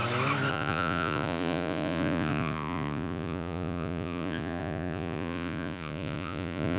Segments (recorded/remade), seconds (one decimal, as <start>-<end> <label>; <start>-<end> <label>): 0.0-0.5 recorded; 0.5-6.8 remade